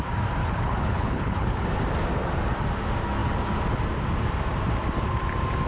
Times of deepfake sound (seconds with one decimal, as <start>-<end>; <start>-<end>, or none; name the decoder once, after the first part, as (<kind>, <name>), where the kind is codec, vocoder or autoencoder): 0.4-1.6 (codec, HILCodec)